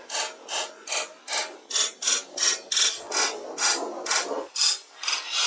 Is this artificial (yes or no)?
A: no